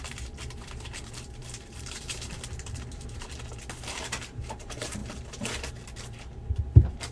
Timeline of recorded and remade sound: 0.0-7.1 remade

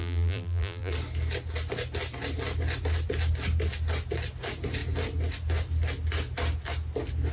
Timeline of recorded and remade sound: 0.0-0.9 remade; 0.9-7.3 recorded

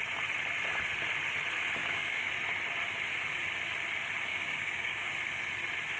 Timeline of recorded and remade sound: 0.0-1.8 recorded; 1.8-2.3 remade; 2.3-4.3 recorded; 4.3-5.1 remade; 5.1-6.0 recorded

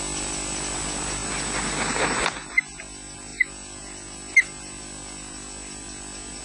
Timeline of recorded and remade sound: 0.0-6.4 recorded

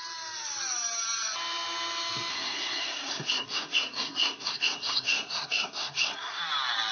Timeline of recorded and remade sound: 0.0-2.3 recorded; 2.3-6.4 remade; 6.4-6.9 recorded

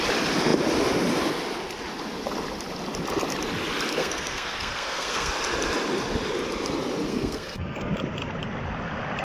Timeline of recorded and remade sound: 0.0-4.0 recorded; 4.0-5.3 remade; 5.3-7.1 recorded; 7.1-7.9 remade; 7.9-9.2 recorded

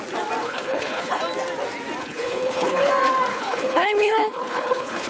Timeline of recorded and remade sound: 0.0-0.4 recorded; 0.4-1.2 remade; 1.2-2.0 recorded; 2.0-2.9 remade; 2.9-3.3 recorded; 3.3-5.1 remade